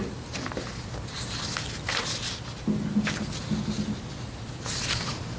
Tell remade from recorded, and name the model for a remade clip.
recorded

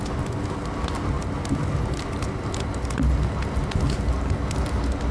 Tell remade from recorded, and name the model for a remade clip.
recorded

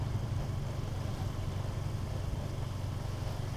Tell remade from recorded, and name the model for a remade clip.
recorded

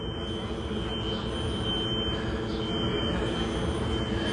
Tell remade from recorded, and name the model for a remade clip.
recorded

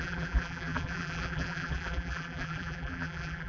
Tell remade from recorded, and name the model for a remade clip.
remade, vocoder, BigVGAN v2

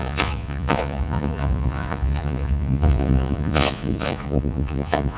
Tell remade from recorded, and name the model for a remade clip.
remade, vocoder, Vocos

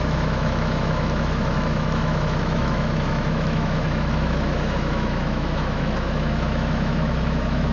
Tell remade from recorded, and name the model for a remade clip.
remade, autoencoder, DAC-VAE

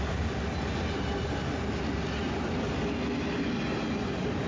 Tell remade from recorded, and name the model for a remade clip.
recorded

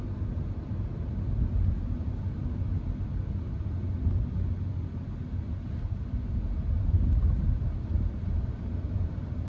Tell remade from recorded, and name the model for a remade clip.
recorded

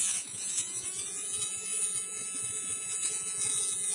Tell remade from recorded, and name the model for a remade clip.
remade, vocoder, Vocos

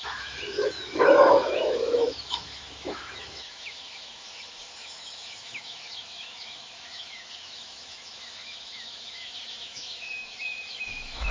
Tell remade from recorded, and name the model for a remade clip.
remade, autoencoder, DAC-VAE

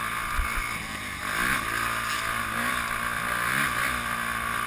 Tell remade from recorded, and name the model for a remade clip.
recorded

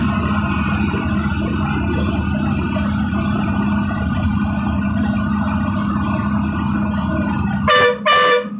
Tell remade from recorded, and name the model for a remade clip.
recorded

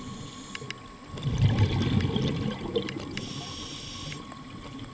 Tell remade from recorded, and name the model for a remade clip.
recorded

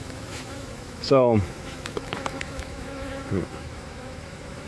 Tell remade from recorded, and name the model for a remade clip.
remade, autoencoder, DAC-VAE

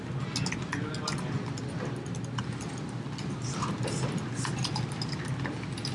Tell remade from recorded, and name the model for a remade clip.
recorded